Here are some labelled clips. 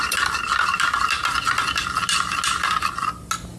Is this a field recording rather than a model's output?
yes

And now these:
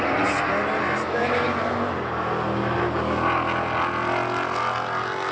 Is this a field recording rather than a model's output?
yes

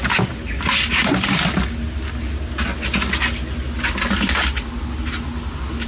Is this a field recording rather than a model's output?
yes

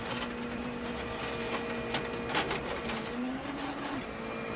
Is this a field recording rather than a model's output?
yes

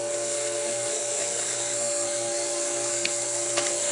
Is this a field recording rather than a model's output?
no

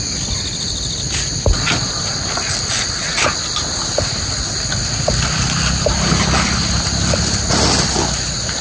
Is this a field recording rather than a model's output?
yes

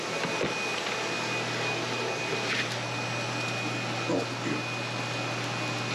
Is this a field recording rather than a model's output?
yes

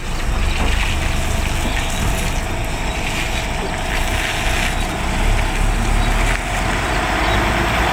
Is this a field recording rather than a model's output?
yes